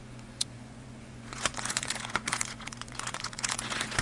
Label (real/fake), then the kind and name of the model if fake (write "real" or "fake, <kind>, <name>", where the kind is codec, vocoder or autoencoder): fake, vocoder, Vocos